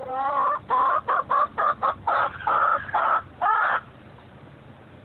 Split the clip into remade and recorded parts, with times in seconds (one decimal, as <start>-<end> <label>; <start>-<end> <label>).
0.0-0.4 remade; 0.4-1.0 recorded; 1.0-5.0 remade